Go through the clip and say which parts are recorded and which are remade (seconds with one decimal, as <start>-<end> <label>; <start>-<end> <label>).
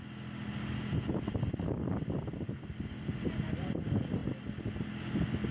0.0-5.5 recorded